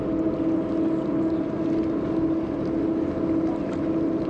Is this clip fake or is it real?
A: real